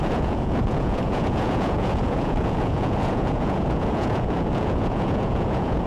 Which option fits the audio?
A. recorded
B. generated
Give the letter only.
B